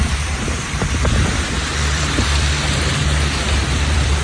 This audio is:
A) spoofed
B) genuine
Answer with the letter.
A